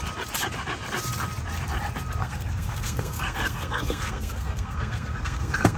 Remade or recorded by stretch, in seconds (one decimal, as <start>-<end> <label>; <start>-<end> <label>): 0.0-2.2 recorded; 2.2-5.8 remade

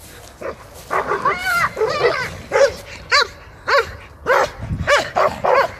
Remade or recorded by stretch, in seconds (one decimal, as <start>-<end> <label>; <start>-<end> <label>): 0.0-1.4 recorded; 1.4-4.9 remade; 4.9-5.8 recorded

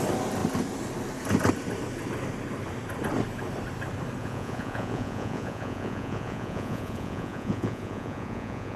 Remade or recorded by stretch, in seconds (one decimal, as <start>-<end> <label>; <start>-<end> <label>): 0.0-4.2 recorded; 4.2-8.8 remade

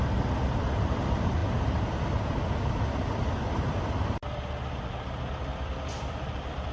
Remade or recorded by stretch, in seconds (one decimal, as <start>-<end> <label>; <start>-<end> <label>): 0.0-1.4 remade; 1.4-5.4 recorded; 5.4-6.7 remade

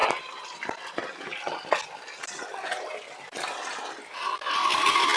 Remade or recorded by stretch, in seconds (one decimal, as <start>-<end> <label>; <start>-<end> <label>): 0.0-5.2 recorded

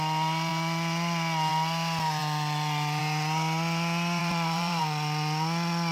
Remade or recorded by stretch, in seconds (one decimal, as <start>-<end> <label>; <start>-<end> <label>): 0.0-4.2 recorded; 4.2-4.8 remade; 4.8-5.9 recorded